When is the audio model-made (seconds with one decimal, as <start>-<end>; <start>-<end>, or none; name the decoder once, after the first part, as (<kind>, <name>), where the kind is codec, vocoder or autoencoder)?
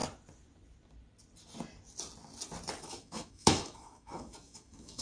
2.8-5.0 (autoencoder, DAC-VAE)